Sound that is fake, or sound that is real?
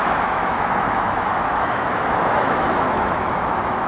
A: fake